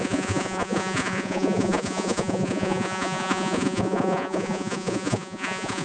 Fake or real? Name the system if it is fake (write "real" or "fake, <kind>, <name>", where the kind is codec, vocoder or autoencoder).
fake, vocoder, Vocos